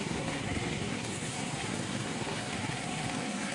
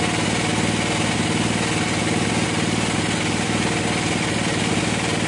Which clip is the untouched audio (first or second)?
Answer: second